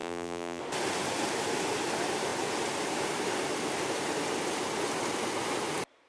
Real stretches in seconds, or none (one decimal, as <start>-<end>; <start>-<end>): 0.6-6.1